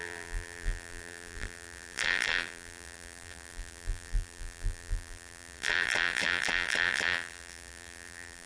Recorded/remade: remade